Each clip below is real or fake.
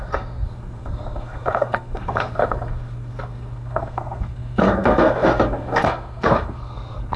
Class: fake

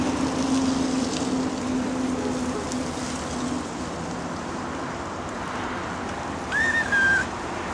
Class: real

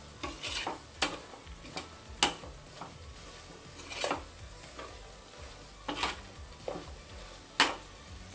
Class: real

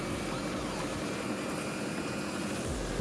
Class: real